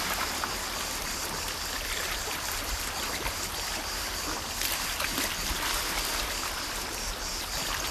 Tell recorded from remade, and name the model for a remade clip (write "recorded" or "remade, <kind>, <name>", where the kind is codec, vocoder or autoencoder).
recorded